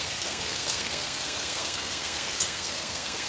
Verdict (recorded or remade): remade